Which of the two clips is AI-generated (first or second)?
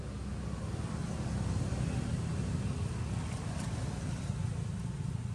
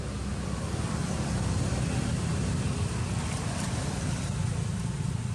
second